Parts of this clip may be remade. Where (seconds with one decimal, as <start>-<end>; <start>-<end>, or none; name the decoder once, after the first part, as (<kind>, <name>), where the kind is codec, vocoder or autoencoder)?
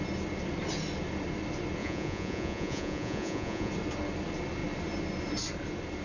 1.8-3.7 (vocoder, Vocos)